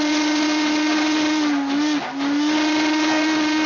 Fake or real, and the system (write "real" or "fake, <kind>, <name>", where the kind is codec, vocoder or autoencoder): real